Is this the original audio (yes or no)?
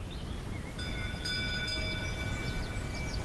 yes